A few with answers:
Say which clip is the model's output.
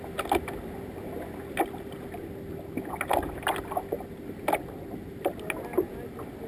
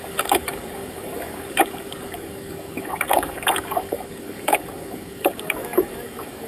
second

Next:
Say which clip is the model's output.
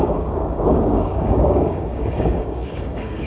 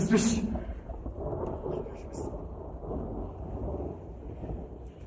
first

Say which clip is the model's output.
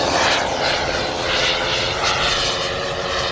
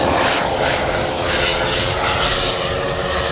second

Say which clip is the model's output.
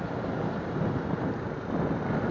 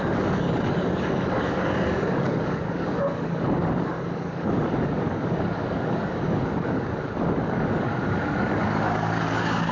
second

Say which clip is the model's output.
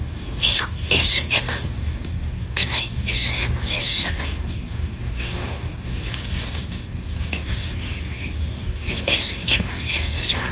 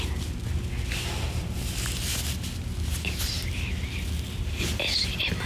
first